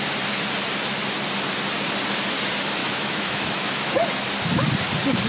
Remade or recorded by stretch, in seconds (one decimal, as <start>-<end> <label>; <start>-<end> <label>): 0.0-2.8 recorded; 2.8-4.1 remade; 4.1-5.3 recorded